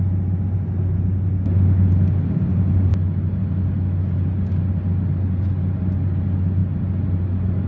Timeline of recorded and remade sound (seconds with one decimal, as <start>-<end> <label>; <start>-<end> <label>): 0.0-7.7 recorded